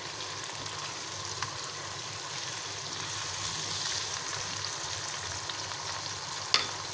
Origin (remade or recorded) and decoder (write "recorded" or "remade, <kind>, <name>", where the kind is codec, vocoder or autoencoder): recorded